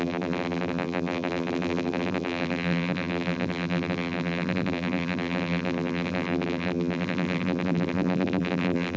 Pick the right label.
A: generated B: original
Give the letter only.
A